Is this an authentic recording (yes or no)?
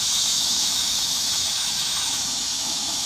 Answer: no